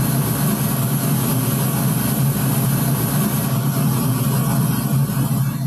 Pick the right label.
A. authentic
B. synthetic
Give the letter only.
A